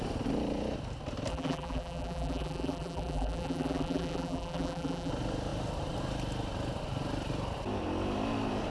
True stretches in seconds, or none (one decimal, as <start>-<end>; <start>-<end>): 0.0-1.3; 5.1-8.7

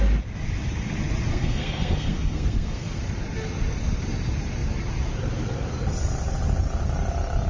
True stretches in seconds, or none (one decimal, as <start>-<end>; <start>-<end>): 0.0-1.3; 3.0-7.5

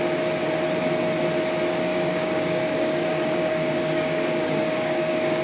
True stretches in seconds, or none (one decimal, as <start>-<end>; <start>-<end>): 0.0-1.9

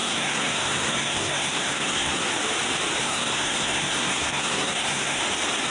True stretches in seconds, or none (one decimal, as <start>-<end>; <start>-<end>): 2.3-3.0; 5.2-5.7

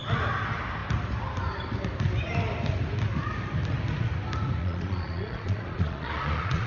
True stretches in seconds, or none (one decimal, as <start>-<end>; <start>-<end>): 0.0-4.6